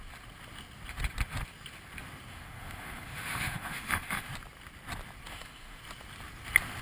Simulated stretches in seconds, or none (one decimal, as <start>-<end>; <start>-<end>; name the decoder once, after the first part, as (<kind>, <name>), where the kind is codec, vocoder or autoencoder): 2.3-4.3 (autoencoder, DAC-VAE); 5.3-5.8